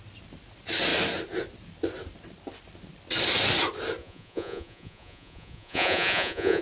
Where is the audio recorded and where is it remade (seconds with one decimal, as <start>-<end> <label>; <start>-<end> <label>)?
0.0-4.0 recorded; 4.0-6.6 remade